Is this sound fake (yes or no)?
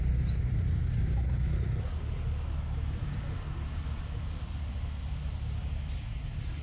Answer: no